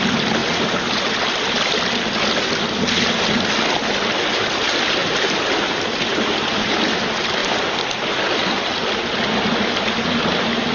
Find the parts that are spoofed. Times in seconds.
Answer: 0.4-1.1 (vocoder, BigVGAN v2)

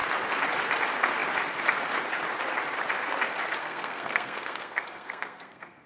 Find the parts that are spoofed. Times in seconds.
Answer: 3.6-5.9 (codec, SNAC)

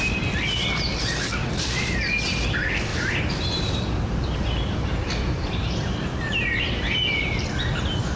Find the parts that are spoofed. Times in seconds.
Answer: 1.4-2.1 (vocoder, BigVGAN v2); 2.9-6.6

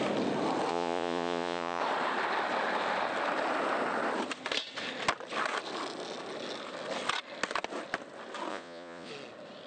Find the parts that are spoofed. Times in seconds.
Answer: 0.7-1.8 (vocoder, Vocos); 8.5-9.1

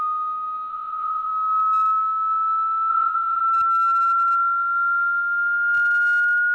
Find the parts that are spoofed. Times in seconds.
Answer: 0.7-1.3 (vocoder, Vocos); 2.9-3.4

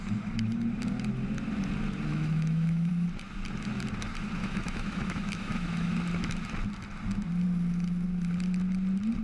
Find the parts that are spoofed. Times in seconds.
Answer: 2.1-2.9 (autoencoder, DAC-VAE); 4.4-5.9

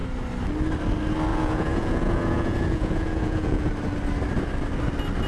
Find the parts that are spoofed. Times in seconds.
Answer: 1.3-3.7 (vocoder, Vocos)